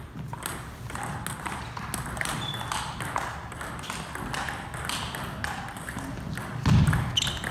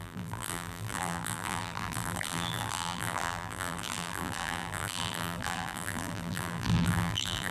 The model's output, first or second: second